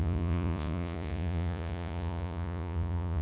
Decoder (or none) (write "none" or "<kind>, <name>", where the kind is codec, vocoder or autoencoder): vocoder, Vocos